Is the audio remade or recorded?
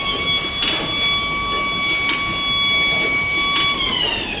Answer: recorded